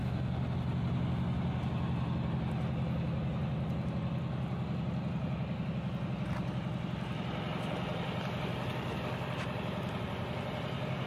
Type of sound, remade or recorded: recorded